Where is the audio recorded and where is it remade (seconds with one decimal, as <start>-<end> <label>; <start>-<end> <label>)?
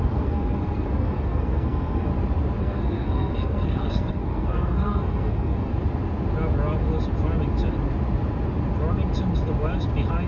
0.0-2.1 remade; 2.1-2.6 recorded; 2.6-5.7 remade; 5.7-10.3 recorded